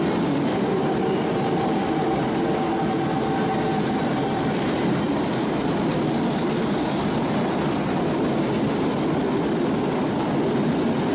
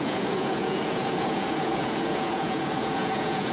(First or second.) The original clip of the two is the first